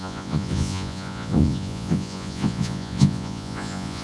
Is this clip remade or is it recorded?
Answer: remade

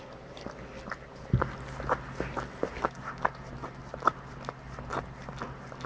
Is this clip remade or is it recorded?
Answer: recorded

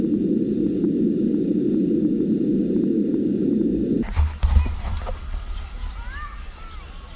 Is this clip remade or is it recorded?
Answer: recorded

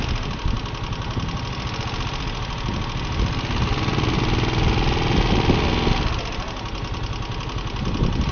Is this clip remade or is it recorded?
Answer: recorded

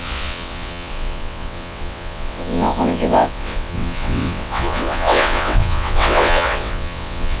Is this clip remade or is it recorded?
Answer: remade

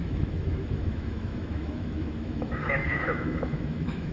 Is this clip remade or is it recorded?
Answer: remade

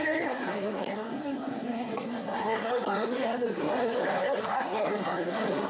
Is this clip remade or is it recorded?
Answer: remade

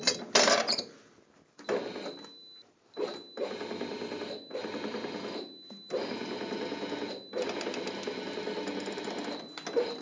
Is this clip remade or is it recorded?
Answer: recorded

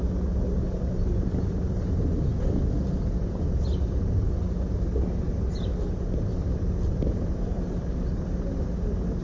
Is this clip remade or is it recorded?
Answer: recorded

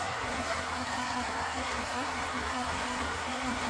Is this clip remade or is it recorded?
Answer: remade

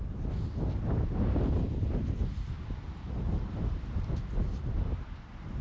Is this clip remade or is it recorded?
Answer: recorded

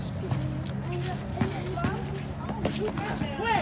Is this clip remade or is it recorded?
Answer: recorded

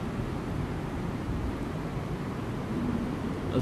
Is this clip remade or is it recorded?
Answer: remade